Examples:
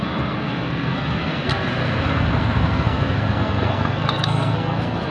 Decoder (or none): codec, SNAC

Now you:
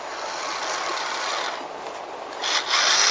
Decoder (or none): none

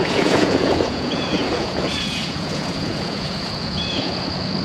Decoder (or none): vocoder, Vocos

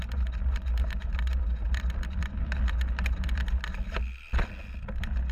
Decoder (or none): none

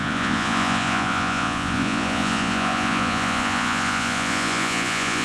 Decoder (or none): vocoder, Vocos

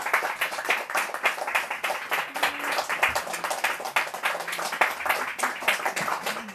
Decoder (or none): none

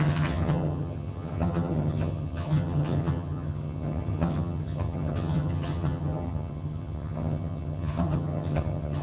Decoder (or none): vocoder, HiFi-GAN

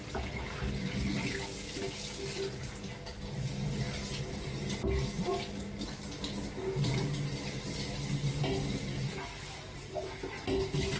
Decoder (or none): none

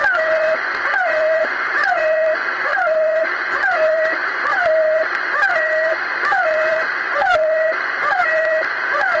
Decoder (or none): vocoder, Vocos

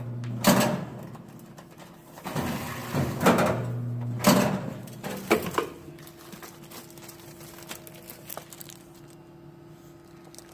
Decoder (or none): none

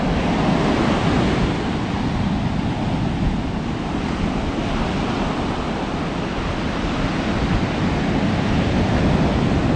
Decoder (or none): none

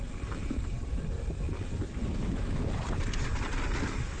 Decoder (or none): none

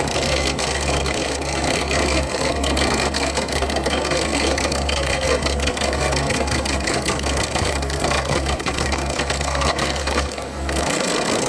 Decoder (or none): codec, SNAC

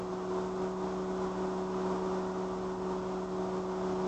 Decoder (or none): none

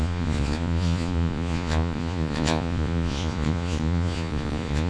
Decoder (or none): vocoder, Vocos